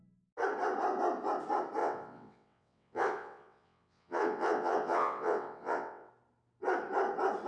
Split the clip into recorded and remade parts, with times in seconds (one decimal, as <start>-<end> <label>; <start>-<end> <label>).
0.0-1.8 recorded; 1.8-6.1 remade; 6.1-7.5 recorded